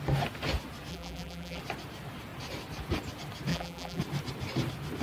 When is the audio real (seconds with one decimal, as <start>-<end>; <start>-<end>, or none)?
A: 0.0-0.9; 1.6-3.5; 4.0-5.0